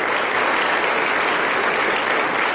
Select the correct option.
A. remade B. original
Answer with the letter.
B